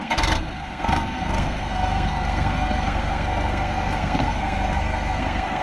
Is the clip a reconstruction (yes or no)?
yes